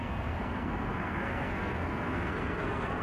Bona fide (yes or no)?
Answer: no